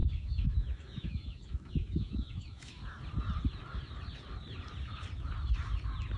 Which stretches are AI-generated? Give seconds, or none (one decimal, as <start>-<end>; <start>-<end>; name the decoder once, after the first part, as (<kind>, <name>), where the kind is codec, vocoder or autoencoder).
0.0-2.8 (autoencoder, DAC-VAE)